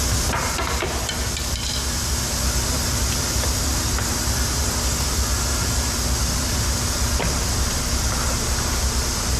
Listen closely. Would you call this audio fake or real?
real